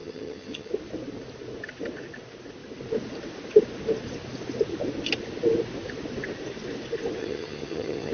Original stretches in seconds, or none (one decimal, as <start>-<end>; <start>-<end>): 0.7-7.2